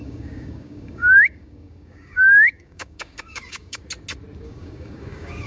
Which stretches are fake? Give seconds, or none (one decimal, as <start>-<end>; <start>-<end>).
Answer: 0.0-3.8; 4.4-5.5